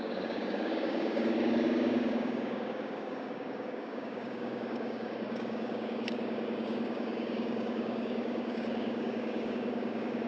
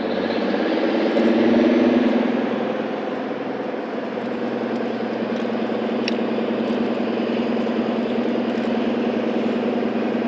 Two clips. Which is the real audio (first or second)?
second